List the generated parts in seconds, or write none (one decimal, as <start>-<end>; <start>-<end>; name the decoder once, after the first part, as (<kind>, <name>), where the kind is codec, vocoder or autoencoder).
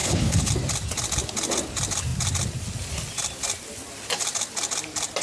0.0-0.5 (codec, HILCodec)